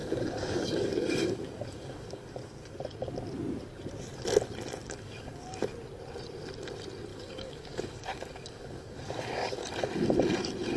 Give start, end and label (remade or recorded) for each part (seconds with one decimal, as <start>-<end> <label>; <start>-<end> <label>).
0.0-2.8 remade; 2.8-4.8 recorded; 4.8-5.6 remade; 5.6-7.1 recorded; 7.1-9.7 remade; 9.7-10.8 recorded